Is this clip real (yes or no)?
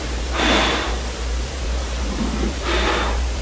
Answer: no